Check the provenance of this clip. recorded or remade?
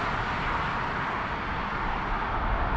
recorded